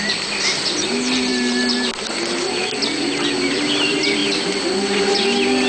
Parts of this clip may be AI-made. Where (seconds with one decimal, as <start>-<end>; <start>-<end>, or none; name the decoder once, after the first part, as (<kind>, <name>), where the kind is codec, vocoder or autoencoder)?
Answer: none